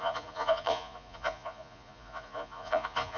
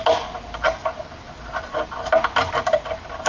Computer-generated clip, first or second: first